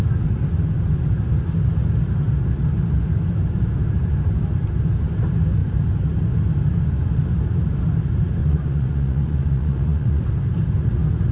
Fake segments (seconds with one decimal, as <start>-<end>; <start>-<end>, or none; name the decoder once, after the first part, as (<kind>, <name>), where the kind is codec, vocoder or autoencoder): 8.4-10.2 (vocoder, Vocos)